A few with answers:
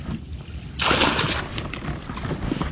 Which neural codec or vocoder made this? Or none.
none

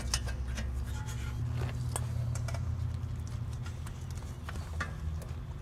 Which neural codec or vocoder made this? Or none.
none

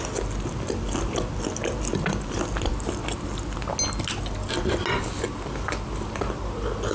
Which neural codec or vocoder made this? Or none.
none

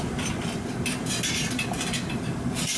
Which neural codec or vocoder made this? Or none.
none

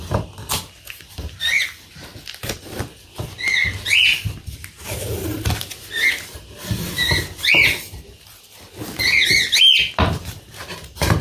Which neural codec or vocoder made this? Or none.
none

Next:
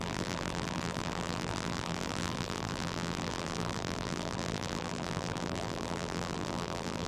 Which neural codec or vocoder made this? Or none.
vocoder, BigVGAN v2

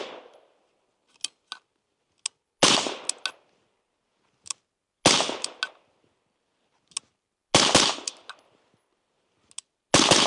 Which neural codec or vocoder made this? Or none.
none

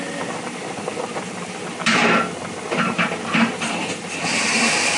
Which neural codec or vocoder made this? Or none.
vocoder, BigVGAN v2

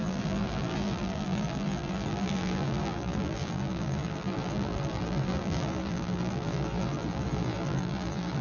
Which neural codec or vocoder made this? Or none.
vocoder, BigVGAN v2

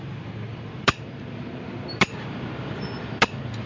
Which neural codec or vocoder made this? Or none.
vocoder, BigVGAN v2